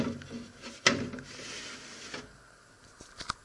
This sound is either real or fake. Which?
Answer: real